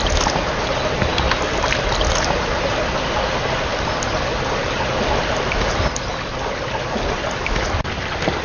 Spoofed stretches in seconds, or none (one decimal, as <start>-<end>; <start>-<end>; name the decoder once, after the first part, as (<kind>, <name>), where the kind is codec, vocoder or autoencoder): none